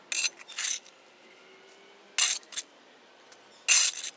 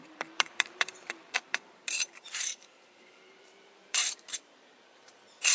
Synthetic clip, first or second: second